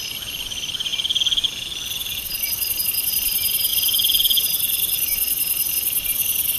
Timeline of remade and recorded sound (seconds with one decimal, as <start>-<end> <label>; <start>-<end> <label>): 0.0-6.6 recorded

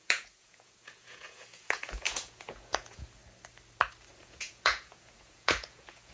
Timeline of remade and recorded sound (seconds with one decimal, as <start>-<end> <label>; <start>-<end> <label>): 0.0-3.2 remade; 3.2-4.2 recorded; 4.2-6.1 remade

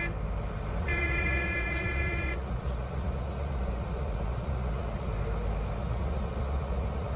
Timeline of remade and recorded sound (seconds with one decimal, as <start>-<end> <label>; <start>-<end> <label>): 0.0-0.8 recorded; 0.8-5.1 remade; 5.1-5.8 recorded; 5.8-7.2 remade